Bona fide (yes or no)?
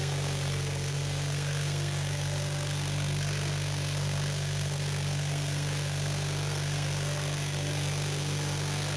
no